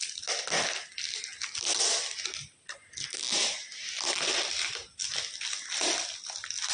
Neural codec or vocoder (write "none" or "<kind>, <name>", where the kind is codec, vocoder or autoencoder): none